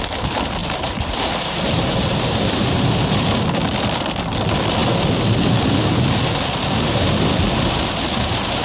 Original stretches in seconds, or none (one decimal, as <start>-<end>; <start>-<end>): 0.0-0.6; 2.9-8.6